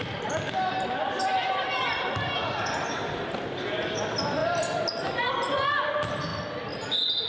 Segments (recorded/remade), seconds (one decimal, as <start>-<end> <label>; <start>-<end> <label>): 0.0-7.3 recorded